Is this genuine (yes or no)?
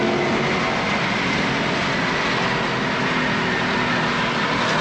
yes